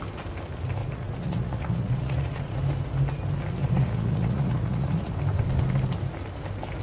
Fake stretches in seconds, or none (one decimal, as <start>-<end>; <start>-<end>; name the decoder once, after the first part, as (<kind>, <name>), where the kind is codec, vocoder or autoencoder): 0.8-2.6 (vocoder, Vocos); 3.6-5.1